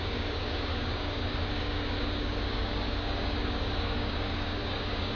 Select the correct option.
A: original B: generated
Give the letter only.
B